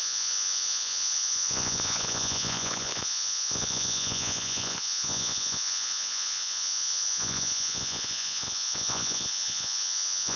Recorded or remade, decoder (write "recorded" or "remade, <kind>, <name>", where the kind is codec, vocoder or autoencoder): remade, vocoder, Vocos